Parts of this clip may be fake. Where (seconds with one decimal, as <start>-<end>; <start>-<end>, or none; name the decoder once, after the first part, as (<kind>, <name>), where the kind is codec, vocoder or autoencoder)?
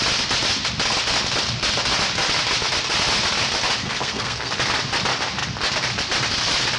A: 3.8-4.5 (codec, SNAC)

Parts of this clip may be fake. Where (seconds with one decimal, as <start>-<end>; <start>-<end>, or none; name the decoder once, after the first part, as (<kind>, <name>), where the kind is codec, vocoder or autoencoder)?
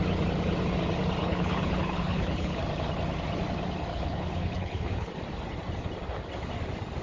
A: 1.2-2.6 (codec, HILCodec); 3.9-5.1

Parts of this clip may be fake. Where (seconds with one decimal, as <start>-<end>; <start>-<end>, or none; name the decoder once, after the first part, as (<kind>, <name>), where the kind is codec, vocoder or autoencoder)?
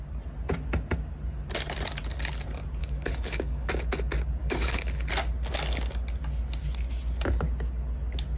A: 2.8-3.7 (codec, DAC); 4.4-5.1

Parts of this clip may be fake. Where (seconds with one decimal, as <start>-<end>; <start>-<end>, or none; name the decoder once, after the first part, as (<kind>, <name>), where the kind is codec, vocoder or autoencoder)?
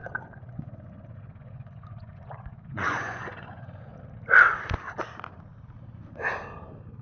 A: 0.0-4.0 (vocoder, Vocos)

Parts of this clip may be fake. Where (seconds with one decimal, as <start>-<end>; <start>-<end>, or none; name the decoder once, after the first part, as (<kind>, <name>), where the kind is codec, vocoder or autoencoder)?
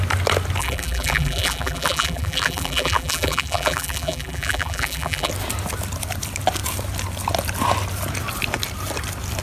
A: 0.6-5.3 (vocoder, BigVGAN v2)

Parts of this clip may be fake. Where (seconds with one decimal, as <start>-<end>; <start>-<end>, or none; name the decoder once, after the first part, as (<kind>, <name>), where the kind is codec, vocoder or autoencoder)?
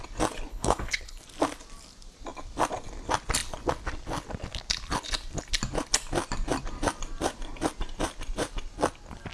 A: 0.5-1.2 (codec, HILCodec)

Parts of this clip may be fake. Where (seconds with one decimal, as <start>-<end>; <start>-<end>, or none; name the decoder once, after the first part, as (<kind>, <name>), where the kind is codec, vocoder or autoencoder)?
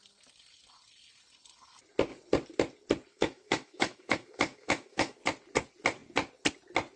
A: 3.1-5.2 (autoencoder, DAC-VAE)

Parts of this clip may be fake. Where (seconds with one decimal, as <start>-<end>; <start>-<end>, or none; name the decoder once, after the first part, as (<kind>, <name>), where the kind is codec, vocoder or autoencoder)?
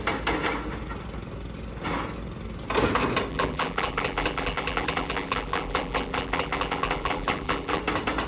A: 3.3-7.8 (vocoder, BigVGAN v2)